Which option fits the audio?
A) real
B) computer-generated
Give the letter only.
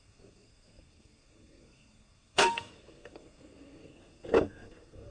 B